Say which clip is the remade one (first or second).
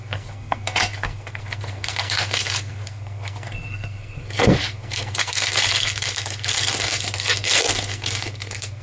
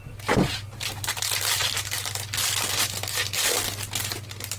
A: first